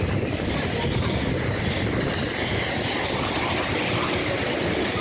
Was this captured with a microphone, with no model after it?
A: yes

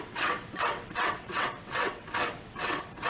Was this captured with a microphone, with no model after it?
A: no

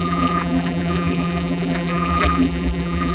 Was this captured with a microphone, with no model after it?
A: no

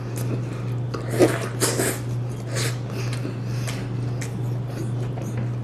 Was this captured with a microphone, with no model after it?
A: yes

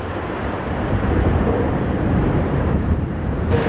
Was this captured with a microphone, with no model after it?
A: no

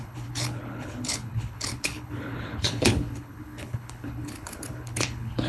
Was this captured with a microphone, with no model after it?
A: no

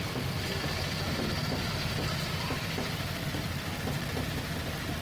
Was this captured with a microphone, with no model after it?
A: no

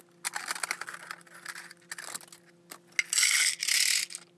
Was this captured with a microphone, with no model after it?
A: yes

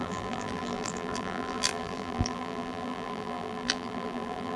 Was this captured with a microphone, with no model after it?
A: no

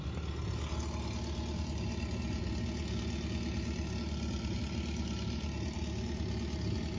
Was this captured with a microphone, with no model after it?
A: yes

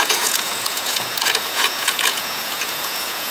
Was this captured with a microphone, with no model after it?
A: no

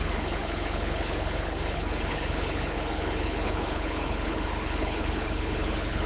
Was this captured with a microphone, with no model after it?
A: no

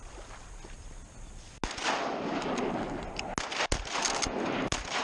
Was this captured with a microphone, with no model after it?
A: yes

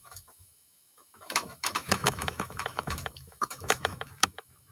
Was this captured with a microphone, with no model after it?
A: no